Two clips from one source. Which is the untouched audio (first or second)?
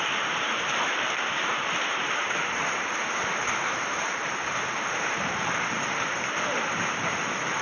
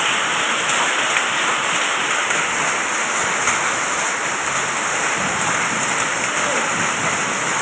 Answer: second